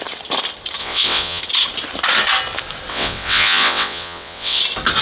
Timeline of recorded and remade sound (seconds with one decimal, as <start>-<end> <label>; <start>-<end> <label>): 0.0-0.8 recorded; 0.8-1.4 remade; 1.4-2.9 recorded; 2.9-4.6 remade; 4.6-5.0 recorded